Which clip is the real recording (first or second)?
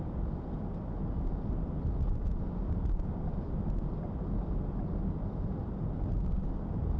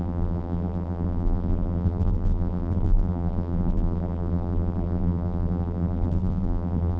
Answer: first